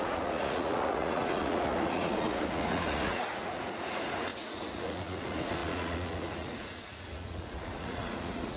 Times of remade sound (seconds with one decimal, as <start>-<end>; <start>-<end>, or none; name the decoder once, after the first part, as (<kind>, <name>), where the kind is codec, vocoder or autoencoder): 0.0-8.6 (vocoder, Vocos)